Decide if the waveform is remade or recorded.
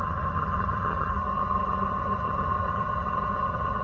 remade